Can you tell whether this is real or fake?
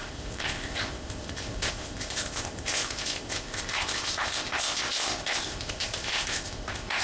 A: fake